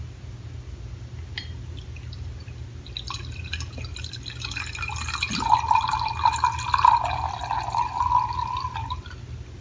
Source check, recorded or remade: recorded